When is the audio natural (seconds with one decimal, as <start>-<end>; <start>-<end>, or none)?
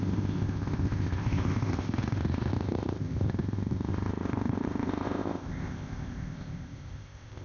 none